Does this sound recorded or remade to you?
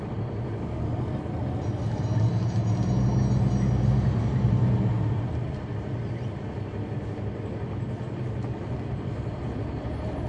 recorded